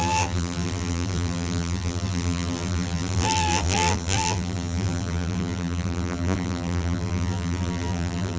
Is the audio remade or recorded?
remade